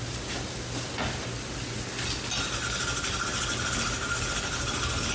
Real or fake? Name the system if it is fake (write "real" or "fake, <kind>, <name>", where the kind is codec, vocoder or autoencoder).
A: real